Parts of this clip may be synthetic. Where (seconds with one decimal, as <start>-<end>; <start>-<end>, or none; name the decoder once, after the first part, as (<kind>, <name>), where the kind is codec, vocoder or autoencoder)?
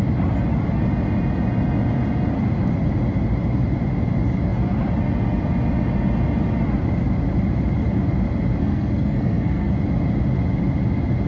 8.6-9.7 (codec, SNAC)